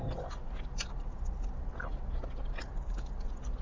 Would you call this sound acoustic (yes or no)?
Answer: yes